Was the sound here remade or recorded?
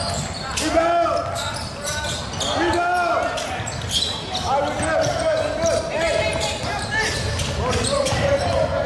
recorded